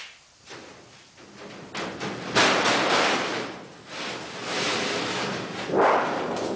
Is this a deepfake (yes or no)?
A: no